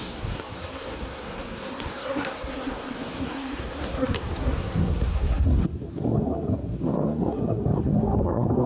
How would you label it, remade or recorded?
remade